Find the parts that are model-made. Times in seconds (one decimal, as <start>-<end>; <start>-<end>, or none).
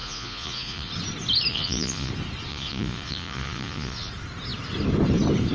0.0-0.9; 1.5-2.1; 2.5-4.1